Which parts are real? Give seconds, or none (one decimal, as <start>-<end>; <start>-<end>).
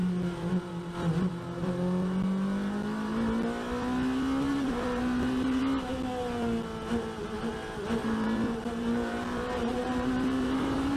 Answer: 0.0-4.5; 5.6-8.0